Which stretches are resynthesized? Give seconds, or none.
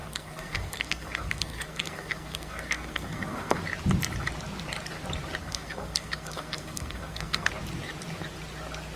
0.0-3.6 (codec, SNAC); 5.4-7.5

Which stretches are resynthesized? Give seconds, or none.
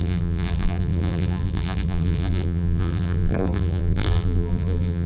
0.0-5.1 (vocoder, BigVGAN v2)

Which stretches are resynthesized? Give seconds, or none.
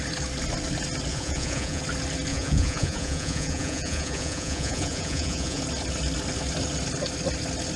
1.1-1.8 (vocoder, Vocos); 2.3-5.6